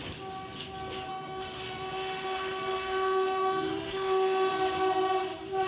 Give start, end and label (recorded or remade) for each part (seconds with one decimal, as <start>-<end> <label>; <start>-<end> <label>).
0.0-1.1 recorded; 1.1-4.5 remade; 4.5-5.7 recorded